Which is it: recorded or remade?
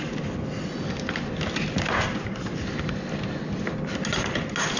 recorded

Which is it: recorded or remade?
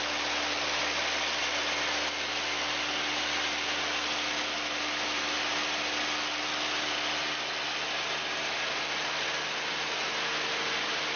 recorded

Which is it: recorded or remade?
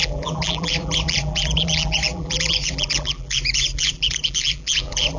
remade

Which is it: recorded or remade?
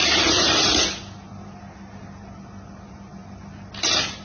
recorded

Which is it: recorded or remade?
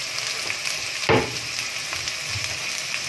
recorded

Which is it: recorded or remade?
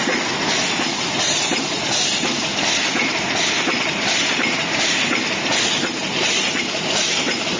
recorded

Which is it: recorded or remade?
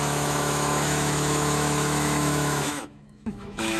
remade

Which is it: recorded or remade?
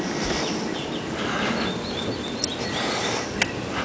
recorded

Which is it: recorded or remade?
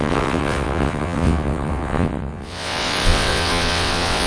remade